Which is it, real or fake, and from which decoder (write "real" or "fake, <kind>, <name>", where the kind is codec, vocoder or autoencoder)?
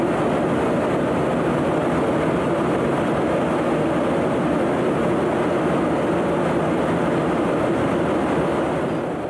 real